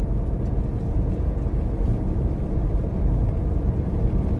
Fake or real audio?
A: fake